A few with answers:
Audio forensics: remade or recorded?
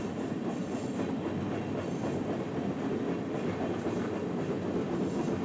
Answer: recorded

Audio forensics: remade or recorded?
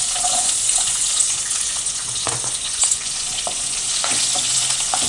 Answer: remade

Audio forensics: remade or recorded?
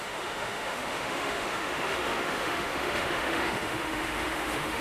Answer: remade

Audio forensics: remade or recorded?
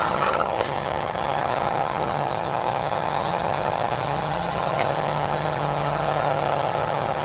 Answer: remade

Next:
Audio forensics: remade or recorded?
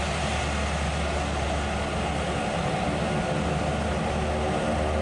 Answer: recorded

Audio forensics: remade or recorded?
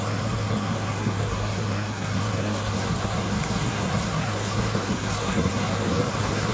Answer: remade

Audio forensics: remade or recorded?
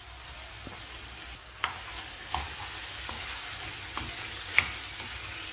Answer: recorded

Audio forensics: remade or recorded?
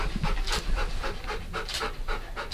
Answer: recorded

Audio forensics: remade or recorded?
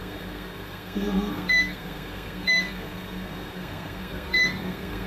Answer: remade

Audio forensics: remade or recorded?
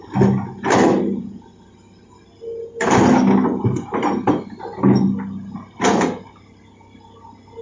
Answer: recorded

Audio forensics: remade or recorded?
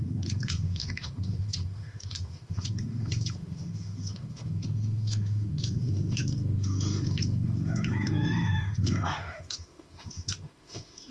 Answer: remade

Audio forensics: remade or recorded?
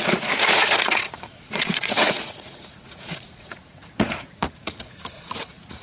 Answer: remade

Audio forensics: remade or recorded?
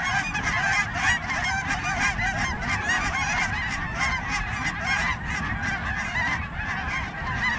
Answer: recorded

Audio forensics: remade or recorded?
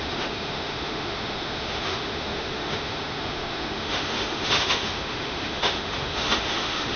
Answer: remade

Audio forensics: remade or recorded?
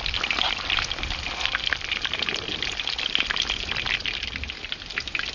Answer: recorded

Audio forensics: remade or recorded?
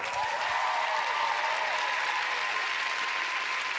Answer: recorded